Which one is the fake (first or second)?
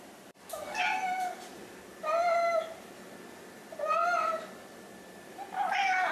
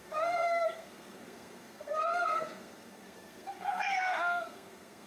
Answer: second